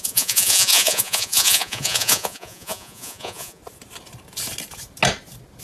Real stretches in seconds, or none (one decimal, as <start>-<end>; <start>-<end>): 3.6-5.6